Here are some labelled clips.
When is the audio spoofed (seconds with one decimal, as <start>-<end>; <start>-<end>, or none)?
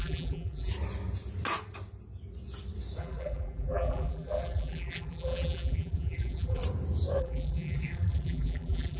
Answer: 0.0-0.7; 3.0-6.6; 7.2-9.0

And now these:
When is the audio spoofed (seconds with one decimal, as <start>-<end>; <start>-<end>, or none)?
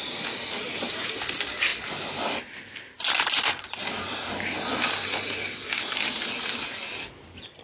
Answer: none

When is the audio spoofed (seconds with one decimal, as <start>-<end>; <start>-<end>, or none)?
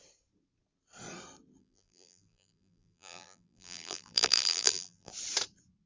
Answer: 1.6-5.1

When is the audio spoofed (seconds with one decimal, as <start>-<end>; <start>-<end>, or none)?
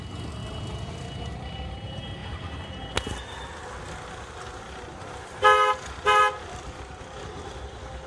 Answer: none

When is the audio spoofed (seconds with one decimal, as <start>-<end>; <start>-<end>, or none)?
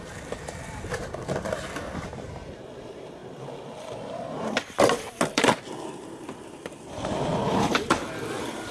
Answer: 0.0-3.2; 4.2-8.7